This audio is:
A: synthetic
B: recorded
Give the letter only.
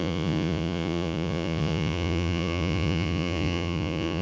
A